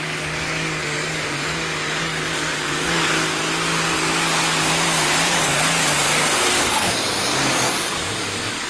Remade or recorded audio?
remade